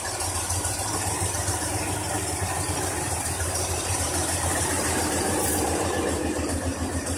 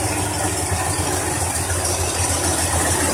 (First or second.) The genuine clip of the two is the second